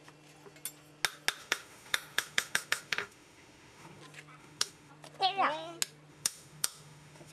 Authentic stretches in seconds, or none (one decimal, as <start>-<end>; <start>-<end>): 0.0-1.4; 4.0-4.4; 4.9-6.1